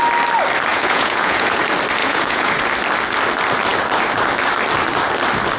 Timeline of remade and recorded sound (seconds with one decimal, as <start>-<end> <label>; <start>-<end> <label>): 0.0-0.7 recorded; 0.7-1.6 remade; 1.6-2.0 recorded; 2.0-2.6 remade; 2.6-5.6 recorded